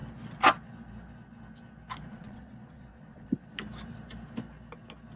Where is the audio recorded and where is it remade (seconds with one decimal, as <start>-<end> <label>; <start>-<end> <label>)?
0.0-2.1 recorded; 2.1-3.4 remade; 3.4-5.2 recorded